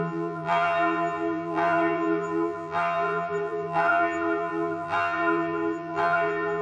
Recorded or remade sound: remade